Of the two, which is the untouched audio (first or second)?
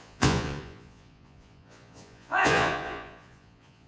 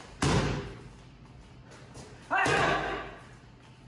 second